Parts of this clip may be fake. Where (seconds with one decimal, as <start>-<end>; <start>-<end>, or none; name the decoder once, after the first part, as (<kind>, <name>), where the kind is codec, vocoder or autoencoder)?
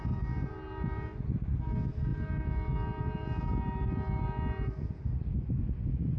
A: none